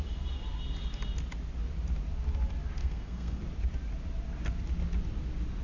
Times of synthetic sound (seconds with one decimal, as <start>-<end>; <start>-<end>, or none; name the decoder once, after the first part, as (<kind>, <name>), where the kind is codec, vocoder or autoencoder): 2.8-3.4 (codec, SNAC)

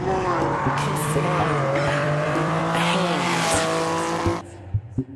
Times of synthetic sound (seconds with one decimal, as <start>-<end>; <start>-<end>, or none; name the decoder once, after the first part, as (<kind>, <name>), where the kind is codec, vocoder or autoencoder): 1.0-2.6 (vocoder, BigVGAN v2)

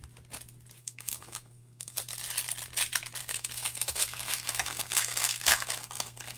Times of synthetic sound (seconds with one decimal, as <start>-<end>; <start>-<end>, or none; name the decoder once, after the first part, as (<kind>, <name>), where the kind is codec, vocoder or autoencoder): 0.8-2.0 (codec, SNAC); 3.2-6.4

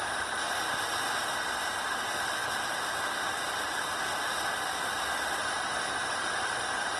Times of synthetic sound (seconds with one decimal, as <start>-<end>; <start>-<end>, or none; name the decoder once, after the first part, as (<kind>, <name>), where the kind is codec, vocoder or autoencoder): 0.0-7.0 (vocoder, BigVGAN v2)

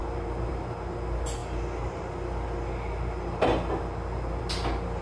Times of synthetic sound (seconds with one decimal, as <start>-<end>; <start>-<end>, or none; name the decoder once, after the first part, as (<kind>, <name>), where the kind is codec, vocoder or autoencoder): none